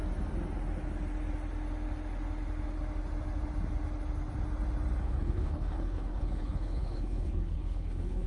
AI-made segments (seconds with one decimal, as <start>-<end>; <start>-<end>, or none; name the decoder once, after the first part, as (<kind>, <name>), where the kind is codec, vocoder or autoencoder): 5.0-8.3 (codec, HILCodec)